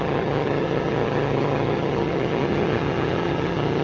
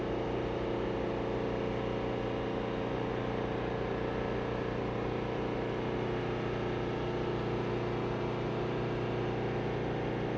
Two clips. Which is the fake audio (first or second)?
first